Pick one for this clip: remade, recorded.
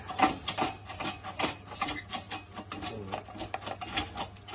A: recorded